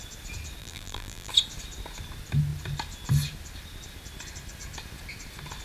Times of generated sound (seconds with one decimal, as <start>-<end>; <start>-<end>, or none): 0.6-1.3